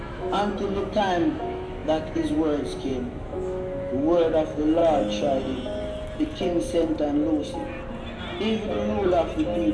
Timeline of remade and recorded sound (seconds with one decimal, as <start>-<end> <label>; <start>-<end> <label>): 0.0-4.8 remade; 4.8-9.7 recorded